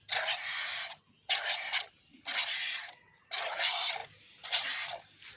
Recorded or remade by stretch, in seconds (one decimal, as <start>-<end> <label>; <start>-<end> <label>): 0.0-5.4 recorded